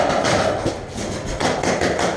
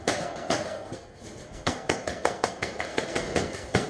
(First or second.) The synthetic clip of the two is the second